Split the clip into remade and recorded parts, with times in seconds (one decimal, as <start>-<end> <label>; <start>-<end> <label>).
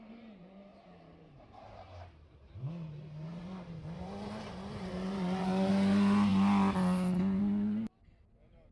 0.0-0.7 recorded; 0.7-2.7 remade; 2.7-3.3 recorded; 3.3-5.7 remade; 5.7-8.7 recorded